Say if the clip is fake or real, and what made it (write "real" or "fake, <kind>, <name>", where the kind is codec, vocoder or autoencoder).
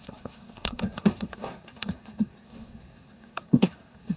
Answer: fake, codec, SNAC